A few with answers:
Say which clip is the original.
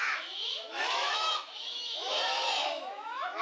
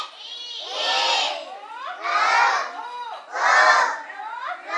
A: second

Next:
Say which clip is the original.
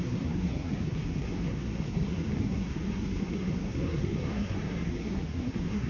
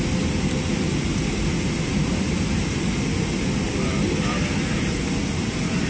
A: second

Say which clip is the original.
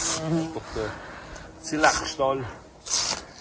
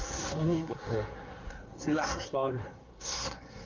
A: first